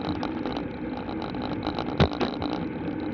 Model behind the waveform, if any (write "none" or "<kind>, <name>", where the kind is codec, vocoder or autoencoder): none